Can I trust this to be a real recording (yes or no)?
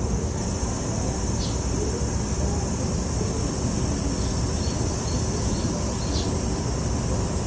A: yes